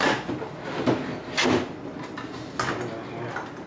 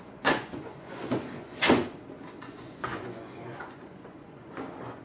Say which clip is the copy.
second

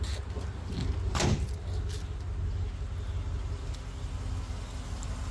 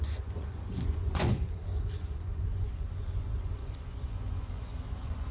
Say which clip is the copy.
second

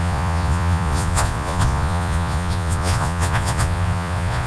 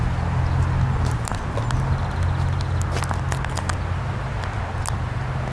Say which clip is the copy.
first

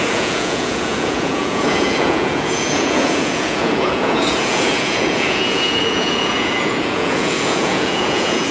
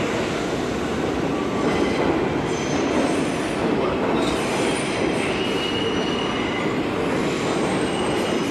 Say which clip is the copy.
first